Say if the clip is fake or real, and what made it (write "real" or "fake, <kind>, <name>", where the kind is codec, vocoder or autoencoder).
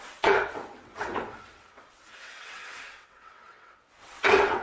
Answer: fake, vocoder, WaveNeXt